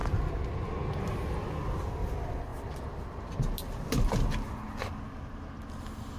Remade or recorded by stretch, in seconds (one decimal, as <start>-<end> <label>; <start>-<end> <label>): 0.0-6.2 recorded